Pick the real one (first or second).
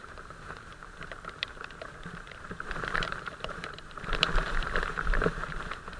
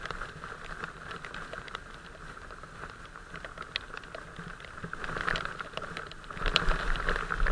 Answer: second